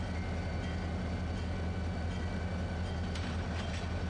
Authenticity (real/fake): real